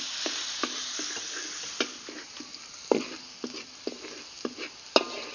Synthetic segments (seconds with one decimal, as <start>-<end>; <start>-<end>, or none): none